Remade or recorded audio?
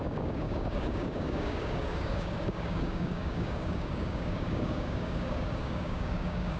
remade